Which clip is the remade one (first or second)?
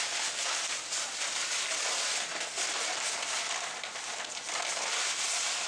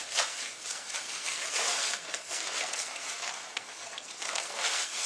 second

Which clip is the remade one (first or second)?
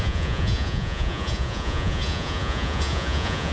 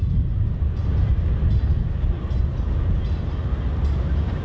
first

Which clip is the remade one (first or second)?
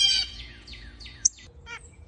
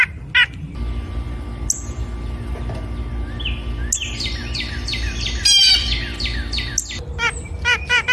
first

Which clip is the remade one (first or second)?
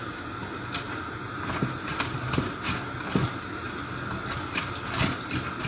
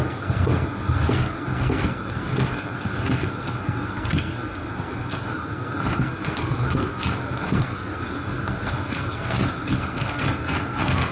second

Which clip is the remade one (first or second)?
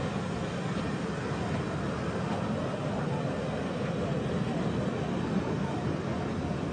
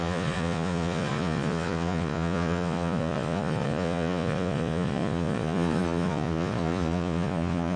second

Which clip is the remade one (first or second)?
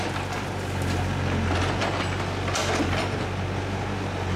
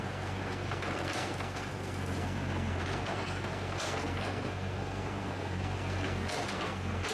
second